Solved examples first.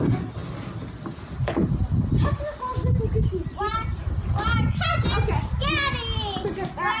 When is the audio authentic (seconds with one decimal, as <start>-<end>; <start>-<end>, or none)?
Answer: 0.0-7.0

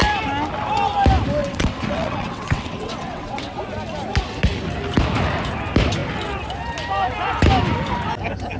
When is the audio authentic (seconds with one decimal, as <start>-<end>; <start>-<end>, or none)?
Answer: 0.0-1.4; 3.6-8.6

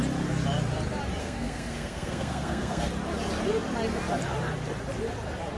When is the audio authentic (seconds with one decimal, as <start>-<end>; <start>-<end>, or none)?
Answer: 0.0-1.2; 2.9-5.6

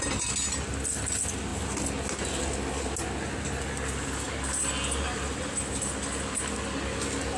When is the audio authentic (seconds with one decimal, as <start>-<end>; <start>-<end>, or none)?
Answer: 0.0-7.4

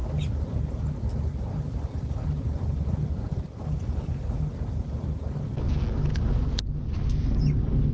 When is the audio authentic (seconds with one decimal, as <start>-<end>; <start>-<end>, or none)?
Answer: 0.0-7.9